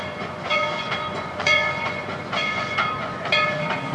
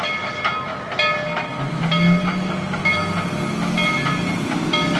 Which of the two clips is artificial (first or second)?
first